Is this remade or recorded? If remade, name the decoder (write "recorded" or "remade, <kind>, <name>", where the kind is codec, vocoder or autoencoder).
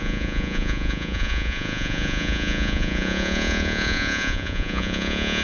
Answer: remade, vocoder, Vocos